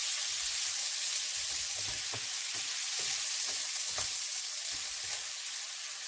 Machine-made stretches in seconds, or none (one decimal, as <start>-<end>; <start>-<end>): none